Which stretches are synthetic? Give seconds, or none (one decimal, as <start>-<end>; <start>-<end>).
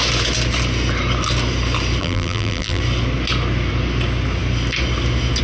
2.0-2.8